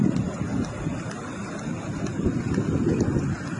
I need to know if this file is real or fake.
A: real